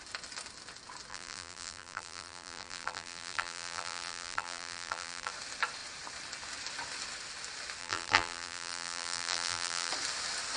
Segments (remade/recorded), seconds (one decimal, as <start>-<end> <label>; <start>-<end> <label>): 0.0-1.1 recorded; 1.1-5.3 remade; 5.3-7.8 recorded; 7.8-9.9 remade; 9.9-10.6 recorded